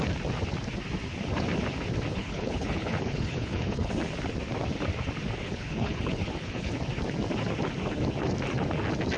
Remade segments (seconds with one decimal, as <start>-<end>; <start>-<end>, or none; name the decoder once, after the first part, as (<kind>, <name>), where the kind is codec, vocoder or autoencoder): 2.1-3.9 (codec, HILCodec); 5.4-6.7